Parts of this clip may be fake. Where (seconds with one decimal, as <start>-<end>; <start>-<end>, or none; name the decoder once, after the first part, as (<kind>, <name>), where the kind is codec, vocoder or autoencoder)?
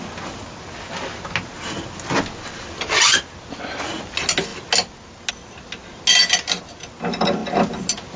none